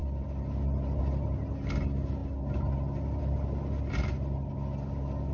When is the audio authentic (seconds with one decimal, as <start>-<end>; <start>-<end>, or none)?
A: 0.0-5.3